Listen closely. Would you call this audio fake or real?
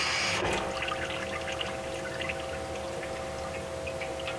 real